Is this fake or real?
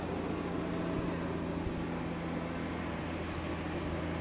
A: real